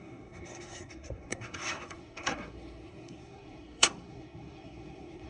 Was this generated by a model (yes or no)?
yes